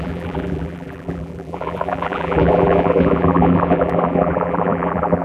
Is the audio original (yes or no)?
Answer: no